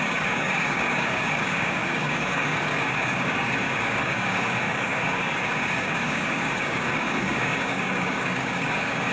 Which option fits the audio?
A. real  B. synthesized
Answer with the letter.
B